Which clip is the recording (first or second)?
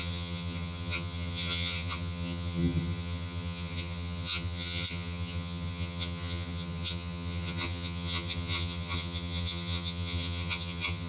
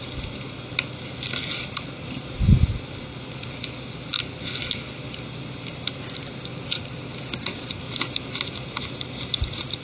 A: second